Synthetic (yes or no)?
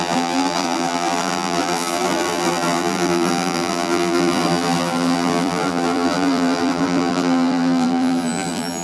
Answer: yes